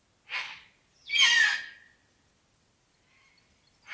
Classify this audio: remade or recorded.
recorded